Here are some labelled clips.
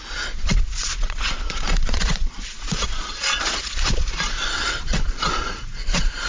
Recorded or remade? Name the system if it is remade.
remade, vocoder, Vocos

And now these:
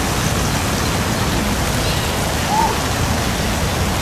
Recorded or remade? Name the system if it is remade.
recorded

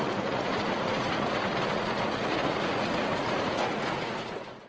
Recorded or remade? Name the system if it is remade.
remade, vocoder, Vocos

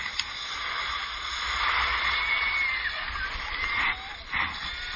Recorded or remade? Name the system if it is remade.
recorded